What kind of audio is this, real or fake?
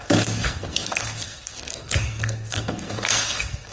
fake